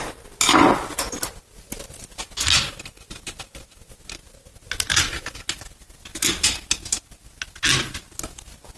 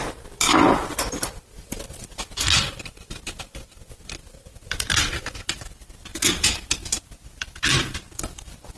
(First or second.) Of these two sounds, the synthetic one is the second